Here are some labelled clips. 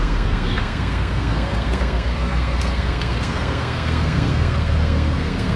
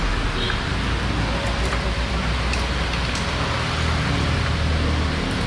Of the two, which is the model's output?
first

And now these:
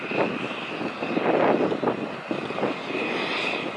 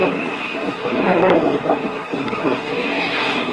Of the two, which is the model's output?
second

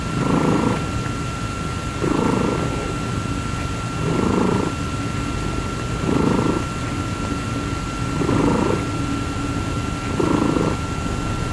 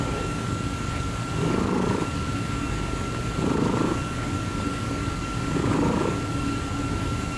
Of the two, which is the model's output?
second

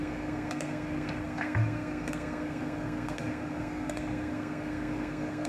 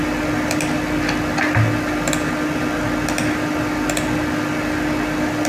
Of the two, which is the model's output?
first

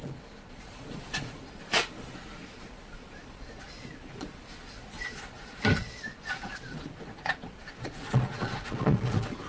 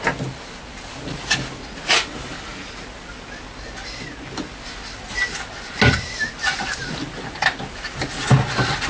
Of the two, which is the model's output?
first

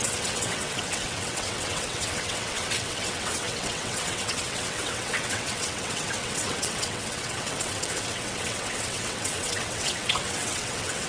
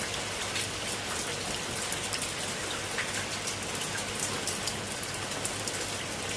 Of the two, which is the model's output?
first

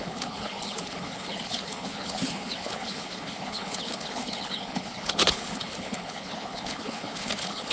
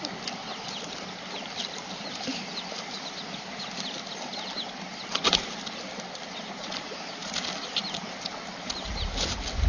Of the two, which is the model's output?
first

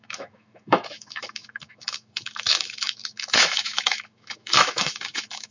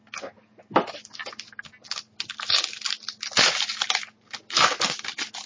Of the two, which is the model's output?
first